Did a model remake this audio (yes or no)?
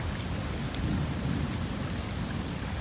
no